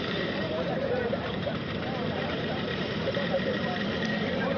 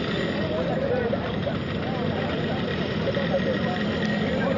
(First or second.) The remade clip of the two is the first